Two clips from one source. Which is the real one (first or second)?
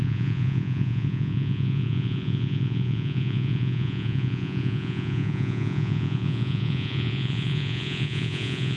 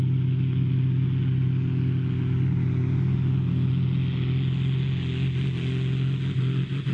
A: second